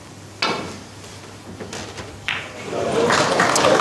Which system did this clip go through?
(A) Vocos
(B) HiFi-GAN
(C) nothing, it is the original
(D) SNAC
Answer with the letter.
C